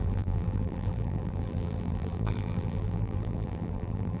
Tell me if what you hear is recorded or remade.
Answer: remade